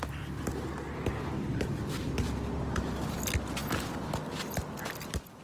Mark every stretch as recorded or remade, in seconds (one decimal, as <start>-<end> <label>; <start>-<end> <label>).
0.0-1.0 remade; 1.0-5.4 recorded